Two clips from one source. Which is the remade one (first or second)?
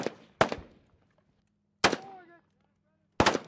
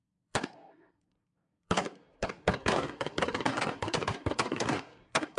second